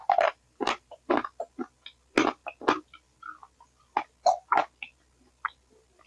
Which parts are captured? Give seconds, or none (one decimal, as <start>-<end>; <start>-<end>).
1.1-6.1